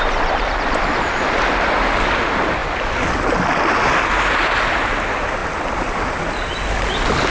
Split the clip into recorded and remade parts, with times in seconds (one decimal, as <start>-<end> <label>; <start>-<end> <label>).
0.0-7.3 recorded